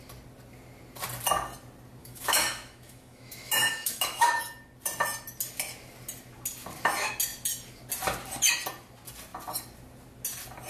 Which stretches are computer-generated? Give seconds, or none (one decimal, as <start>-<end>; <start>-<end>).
2.0-4.4